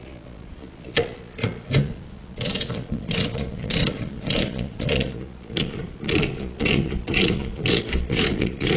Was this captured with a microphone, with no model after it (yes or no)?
no